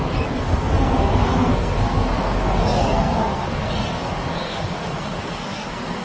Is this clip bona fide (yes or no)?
no